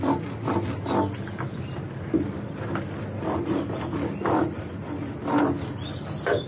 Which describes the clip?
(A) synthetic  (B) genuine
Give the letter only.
B